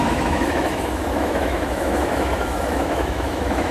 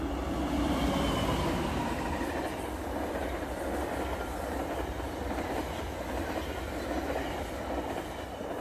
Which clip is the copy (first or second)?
first